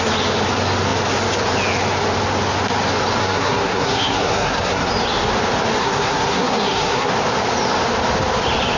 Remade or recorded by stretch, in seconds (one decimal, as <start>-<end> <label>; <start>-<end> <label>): 0.0-3.2 recorded; 3.2-4.9 remade; 4.9-5.8 recorded; 5.8-7.1 remade; 7.1-8.8 recorded